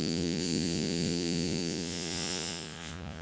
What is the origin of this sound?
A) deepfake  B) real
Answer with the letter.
A